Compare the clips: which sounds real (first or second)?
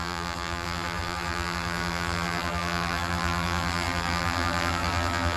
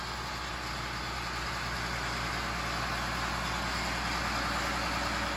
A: second